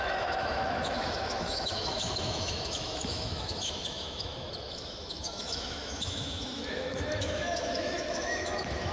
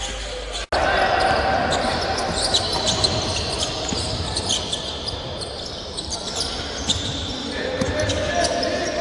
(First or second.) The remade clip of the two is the first